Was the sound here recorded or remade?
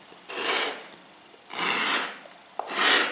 recorded